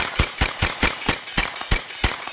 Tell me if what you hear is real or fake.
fake